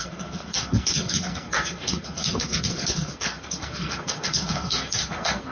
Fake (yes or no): yes